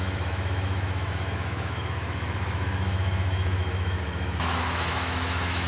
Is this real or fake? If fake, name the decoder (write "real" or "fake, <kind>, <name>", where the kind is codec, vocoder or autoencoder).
fake, autoencoder, DAC-VAE